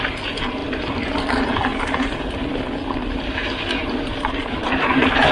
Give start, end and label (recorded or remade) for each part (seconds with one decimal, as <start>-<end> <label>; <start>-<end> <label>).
0.0-0.6 recorded; 0.6-1.1 remade; 1.1-1.7 recorded; 1.7-2.2 remade; 2.2-3.8 recorded; 3.8-5.3 remade